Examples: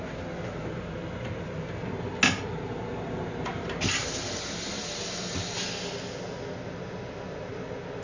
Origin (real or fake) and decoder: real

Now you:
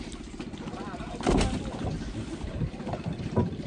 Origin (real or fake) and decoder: real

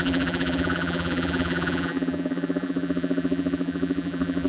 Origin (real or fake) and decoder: fake, vocoder, BigVGAN v2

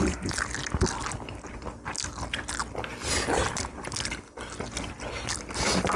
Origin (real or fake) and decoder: real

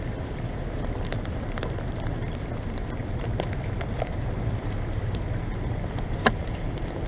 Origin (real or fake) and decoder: fake, vocoder, BigVGAN v2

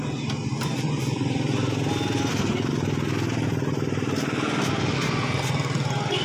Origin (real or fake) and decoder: real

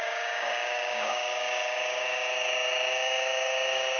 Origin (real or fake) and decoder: fake, codec, DAC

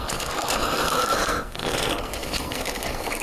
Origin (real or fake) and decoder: fake, codec, SNAC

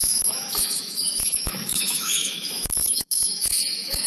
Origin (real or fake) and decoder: fake, autoencoder, DAC-VAE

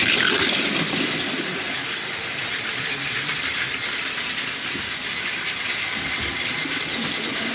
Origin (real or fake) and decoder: fake, vocoder, BigVGAN v2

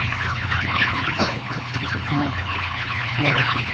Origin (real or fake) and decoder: fake, codec, HILCodec